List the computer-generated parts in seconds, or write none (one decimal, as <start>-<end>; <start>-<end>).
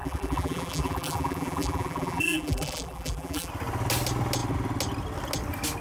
0.0-3.5